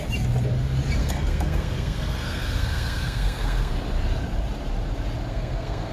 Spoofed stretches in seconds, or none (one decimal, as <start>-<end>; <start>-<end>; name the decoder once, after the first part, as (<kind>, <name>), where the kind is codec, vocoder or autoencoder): 1.0-3.7 (codec, SNAC); 5.3-5.9

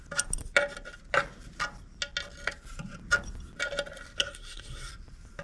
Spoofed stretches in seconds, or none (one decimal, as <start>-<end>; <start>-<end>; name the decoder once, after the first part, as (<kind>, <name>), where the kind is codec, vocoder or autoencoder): 4.2-4.9 (codec, SNAC)

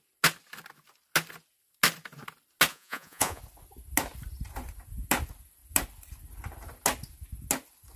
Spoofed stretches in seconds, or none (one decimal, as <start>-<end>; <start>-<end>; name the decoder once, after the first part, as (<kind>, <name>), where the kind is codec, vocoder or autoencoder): 2.7-3.4 (vocoder, Vocos)

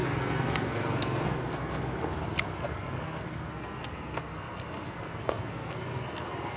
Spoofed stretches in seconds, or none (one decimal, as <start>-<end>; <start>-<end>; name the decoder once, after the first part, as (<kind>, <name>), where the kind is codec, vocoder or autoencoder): 0.0-2.1 (codec, SNAC); 2.5-6.6

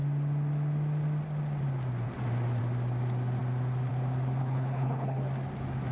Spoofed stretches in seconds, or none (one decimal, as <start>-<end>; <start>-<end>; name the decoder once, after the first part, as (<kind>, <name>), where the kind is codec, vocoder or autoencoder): 4.4-5.2 (codec, HILCodec)

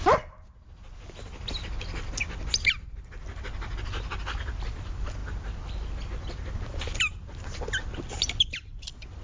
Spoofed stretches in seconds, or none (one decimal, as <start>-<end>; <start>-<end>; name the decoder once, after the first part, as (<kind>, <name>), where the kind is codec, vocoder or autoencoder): none

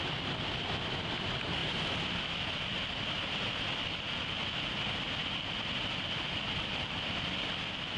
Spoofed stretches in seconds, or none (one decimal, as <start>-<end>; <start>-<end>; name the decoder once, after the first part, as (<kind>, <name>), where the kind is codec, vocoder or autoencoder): none